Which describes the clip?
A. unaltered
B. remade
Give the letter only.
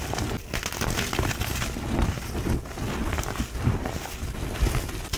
A